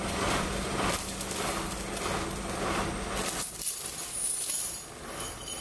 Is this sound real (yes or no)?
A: yes